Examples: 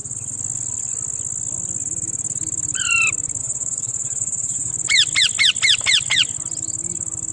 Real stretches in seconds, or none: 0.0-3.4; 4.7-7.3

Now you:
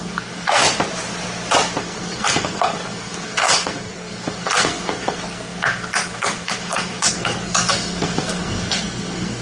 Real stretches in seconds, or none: 0.6-1.8

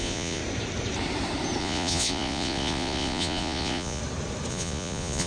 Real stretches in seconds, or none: 0.4-1.6; 4.0-4.5

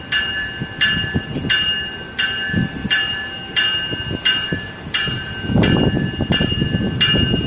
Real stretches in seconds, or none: 0.0-7.5

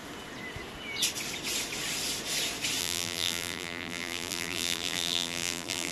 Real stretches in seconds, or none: 0.0-2.8

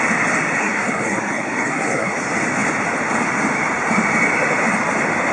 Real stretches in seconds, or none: 0.0-0.6; 2.1-5.3

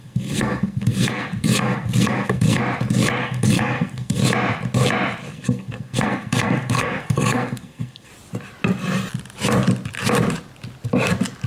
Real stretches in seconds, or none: 2.6-3.2; 4.2-5.3; 8.1-11.5